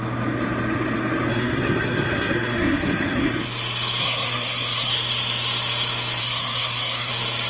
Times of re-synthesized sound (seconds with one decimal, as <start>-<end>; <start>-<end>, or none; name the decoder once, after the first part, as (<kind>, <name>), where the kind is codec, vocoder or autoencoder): 1.3-3.3 (codec, SNAC); 4.0-4.9; 6.2-7.1